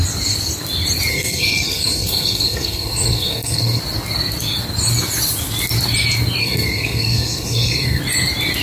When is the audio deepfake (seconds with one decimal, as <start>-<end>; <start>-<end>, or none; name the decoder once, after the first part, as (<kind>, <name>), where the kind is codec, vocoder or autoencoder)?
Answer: 1.1-3.8 (codec, SNAC); 6.4-8.0

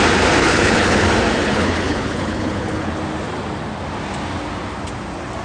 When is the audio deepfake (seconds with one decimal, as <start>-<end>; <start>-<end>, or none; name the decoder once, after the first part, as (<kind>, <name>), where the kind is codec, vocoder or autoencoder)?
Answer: 0.4-1.0 (codec, HILCodec); 1.4-2.9

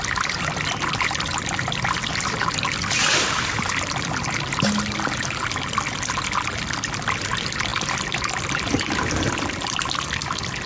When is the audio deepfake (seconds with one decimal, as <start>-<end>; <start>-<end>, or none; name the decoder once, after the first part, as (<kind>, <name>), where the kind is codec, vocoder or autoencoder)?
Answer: none

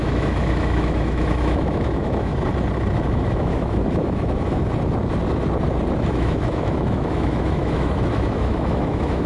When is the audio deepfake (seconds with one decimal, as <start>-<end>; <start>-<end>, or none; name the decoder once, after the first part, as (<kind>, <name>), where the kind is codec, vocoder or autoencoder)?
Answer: 0.0-2.3 (autoencoder, DAC-VAE); 3.1-4.6; 6.1-9.3